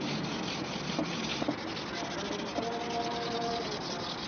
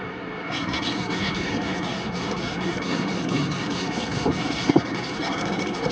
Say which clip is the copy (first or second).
second